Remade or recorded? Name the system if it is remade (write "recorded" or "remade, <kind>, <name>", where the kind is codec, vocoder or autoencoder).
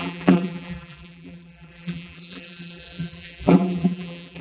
remade, vocoder, BigVGAN v2